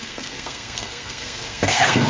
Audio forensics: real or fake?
fake